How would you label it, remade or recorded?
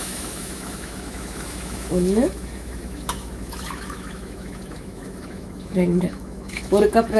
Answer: remade